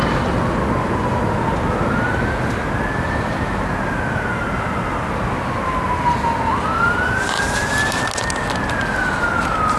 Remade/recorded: recorded